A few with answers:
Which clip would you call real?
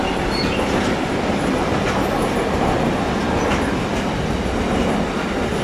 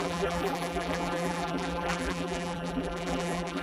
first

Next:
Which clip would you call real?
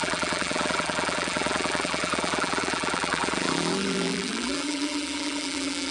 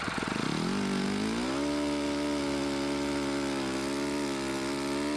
second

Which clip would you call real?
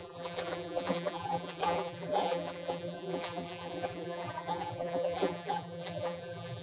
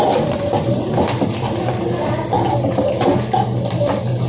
second